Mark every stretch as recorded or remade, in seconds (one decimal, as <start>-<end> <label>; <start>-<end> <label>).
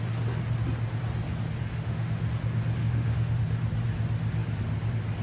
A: 0.0-1.7 recorded; 1.7-2.2 remade; 2.2-2.8 recorded; 2.8-3.4 remade; 3.4-5.2 recorded